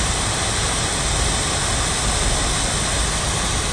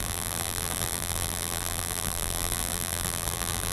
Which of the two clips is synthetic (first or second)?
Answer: second